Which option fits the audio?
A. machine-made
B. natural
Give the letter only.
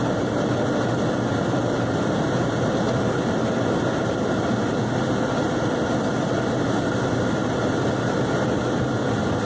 B